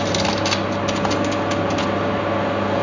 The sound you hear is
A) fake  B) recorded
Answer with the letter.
B